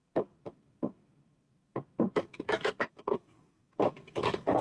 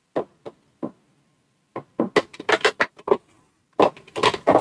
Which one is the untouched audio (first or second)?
second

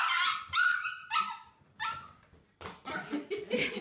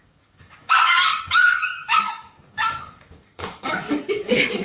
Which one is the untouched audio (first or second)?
first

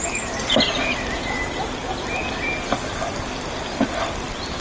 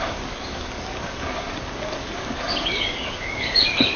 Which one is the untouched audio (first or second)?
first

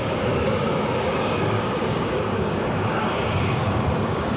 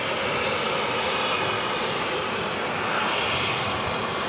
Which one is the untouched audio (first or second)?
second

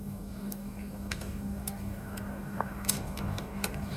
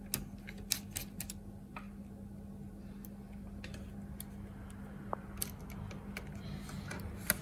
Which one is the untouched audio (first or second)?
second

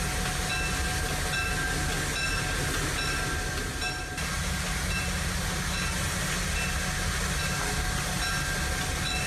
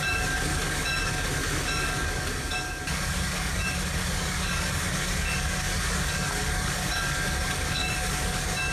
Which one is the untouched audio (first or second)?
first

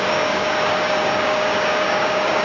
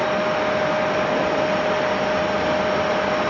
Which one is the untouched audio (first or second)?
second